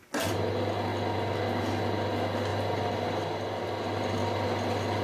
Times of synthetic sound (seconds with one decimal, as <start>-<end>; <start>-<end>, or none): 2.5-3.7; 4.2-5.0